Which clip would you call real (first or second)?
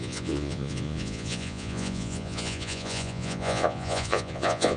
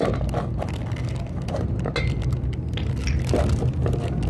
second